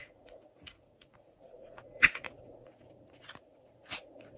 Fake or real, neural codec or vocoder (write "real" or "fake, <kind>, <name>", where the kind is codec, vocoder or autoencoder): fake, vocoder, Vocos